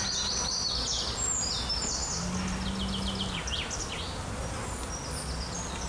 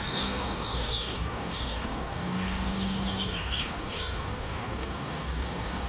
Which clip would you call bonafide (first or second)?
first